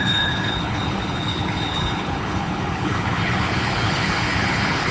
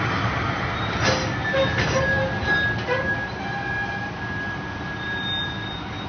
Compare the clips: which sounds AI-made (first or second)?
first